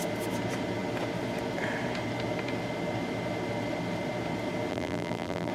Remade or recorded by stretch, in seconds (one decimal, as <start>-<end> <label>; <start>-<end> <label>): 0.0-4.7 recorded; 4.7-5.5 remade